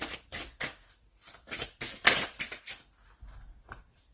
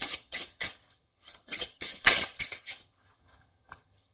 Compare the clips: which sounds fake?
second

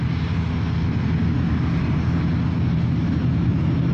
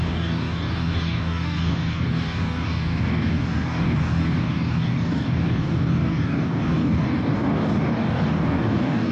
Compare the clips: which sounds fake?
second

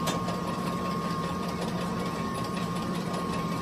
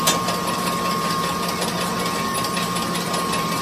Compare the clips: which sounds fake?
first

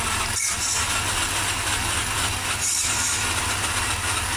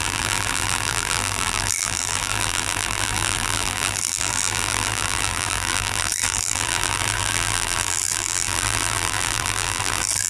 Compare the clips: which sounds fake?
second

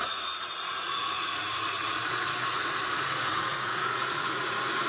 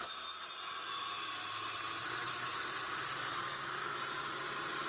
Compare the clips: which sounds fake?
first